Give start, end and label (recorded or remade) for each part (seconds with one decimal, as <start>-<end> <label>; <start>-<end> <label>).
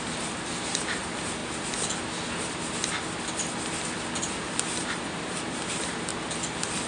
0.0-1.4 remade; 1.4-4.2 recorded; 4.2-6.1 remade; 6.1-6.9 recorded